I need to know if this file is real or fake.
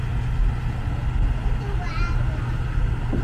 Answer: real